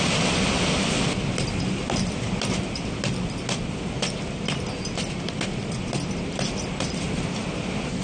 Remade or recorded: recorded